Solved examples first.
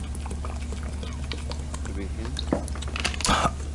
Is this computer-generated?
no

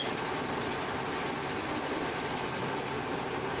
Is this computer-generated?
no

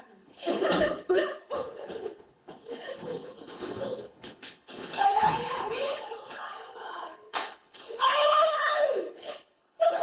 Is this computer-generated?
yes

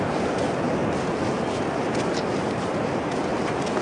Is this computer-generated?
no